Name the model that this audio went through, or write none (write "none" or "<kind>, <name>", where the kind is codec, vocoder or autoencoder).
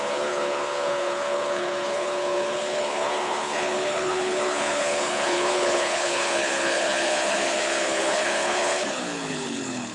codec, HILCodec